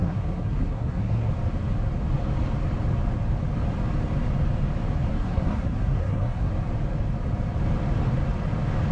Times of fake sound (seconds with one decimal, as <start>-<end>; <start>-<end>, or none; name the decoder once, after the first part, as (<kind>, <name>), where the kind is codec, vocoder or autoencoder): 0.0-1.3 (codec, SNAC); 5.1-6.5